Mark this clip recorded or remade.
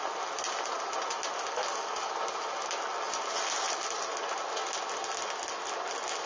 recorded